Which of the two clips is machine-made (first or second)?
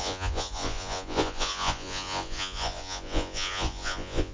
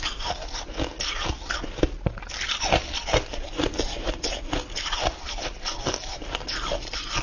first